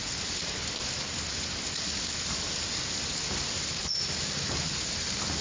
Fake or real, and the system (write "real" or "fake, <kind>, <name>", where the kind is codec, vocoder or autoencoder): real